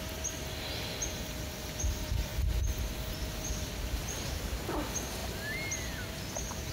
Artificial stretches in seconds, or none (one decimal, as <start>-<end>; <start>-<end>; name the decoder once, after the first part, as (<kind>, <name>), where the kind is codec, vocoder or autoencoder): none